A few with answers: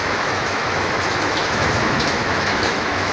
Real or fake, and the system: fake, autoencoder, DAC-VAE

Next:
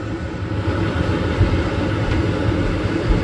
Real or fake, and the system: real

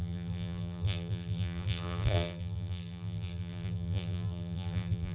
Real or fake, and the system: fake, vocoder, BigVGAN v2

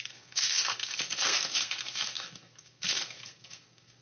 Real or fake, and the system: fake, codec, SNAC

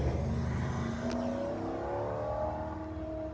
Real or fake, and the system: real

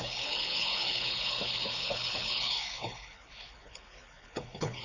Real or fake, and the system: fake, codec, HILCodec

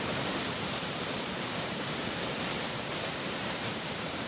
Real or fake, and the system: fake, vocoder, BigVGAN v2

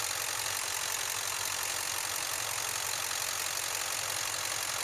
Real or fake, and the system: real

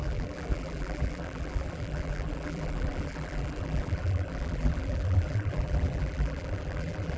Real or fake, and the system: fake, vocoder, BigVGAN v2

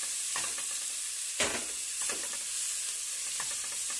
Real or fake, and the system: real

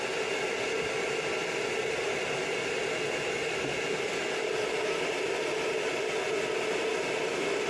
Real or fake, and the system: real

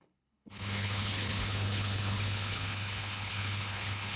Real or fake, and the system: fake, codec, HILCodec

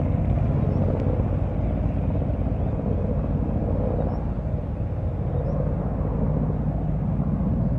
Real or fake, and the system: real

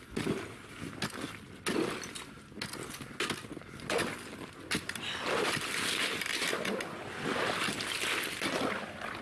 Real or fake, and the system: real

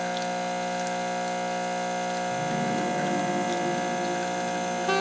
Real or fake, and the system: real